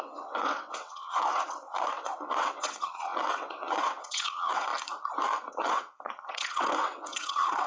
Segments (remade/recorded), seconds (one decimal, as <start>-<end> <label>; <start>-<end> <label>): 0.0-4.7 remade; 4.7-5.5 recorded; 5.5-7.7 remade